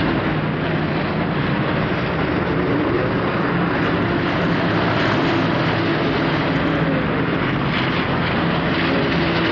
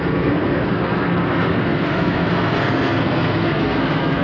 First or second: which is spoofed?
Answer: second